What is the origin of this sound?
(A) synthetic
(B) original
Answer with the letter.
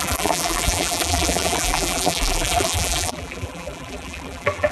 A